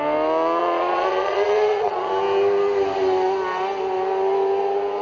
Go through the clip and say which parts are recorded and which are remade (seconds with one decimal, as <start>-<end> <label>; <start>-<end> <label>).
0.0-0.6 recorded; 0.6-2.1 remade; 2.1-5.0 recorded